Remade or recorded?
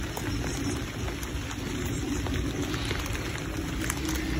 recorded